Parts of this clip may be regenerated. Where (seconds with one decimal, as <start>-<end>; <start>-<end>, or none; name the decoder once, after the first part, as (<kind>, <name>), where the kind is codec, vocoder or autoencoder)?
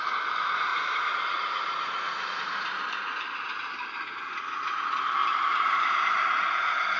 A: 0.7-4.0 (vocoder, BigVGAN v2); 5.2-6.2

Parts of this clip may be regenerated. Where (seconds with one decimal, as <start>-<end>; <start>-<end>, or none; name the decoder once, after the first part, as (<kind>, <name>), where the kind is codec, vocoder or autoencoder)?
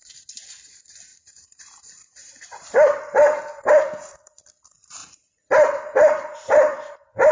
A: 1.1-3.8 (vocoder, BigVGAN v2); 5.0-7.3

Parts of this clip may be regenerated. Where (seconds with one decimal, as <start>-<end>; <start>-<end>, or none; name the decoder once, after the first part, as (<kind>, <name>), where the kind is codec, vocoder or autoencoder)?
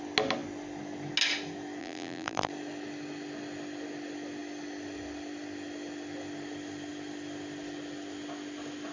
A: 1.8-2.5 (vocoder, BigVGAN v2)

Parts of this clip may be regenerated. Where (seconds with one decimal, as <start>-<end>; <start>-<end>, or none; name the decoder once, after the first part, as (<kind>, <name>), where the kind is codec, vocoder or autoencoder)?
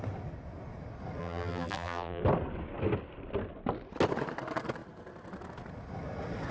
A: 1.2-2.2 (vocoder, BigVGAN v2)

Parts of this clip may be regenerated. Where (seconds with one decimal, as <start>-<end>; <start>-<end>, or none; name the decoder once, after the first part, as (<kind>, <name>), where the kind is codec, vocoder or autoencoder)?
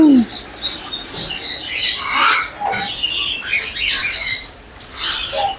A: 4.0-4.8 (vocoder, BigVGAN v2)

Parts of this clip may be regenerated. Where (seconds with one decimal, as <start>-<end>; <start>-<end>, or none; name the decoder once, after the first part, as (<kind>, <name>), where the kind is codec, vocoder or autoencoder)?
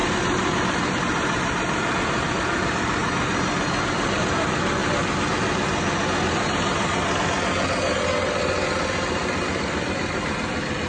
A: 0.0-3.0 (vocoder, BigVGAN v2); 3.9-5.7; 9.4-10.9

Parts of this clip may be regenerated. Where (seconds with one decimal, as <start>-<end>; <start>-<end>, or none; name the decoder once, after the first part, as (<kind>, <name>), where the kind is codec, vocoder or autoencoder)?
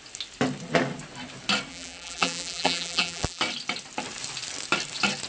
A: 1.7-3.4 (vocoder, BigVGAN v2)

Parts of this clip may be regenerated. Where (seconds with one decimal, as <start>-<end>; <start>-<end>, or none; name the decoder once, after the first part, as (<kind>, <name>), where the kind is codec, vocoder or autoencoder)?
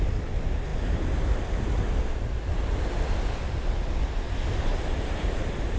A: none